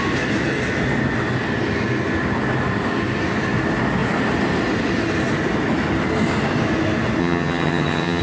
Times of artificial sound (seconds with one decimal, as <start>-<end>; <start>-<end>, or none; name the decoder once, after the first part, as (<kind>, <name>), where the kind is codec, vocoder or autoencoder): 7.2-8.2 (vocoder, HiFi-GAN)